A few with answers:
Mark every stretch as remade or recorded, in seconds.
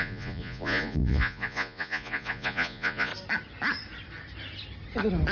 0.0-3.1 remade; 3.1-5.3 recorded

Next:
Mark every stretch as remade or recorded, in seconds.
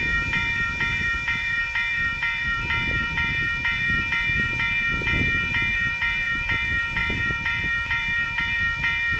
0.0-9.2 remade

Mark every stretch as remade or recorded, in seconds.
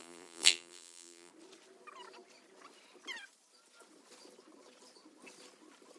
0.0-1.3 remade; 1.3-6.0 recorded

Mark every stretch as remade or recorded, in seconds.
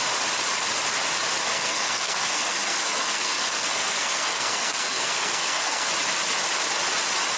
0.0-1.5 recorded; 1.5-5.9 remade; 5.9-7.4 recorded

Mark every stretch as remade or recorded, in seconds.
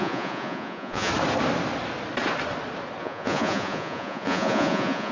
0.0-1.1 remade; 1.1-3.0 recorded; 3.0-5.1 remade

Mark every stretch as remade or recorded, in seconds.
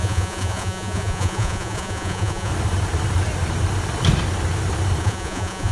0.0-2.5 remade; 2.5-5.0 recorded; 5.0-5.7 remade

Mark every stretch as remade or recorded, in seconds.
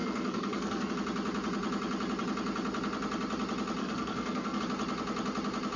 0.0-0.9 remade; 0.9-3.8 recorded; 3.8-4.6 remade; 4.6-5.8 recorded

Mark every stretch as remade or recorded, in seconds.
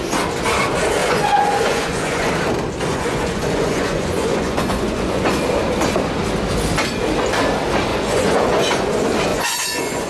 0.0-1.0 recorded; 1.0-2.3 remade; 2.3-2.9 recorded; 2.9-5.3 remade; 5.3-7.9 recorded; 7.9-8.9 remade; 8.9-9.3 recorded; 9.3-10.1 remade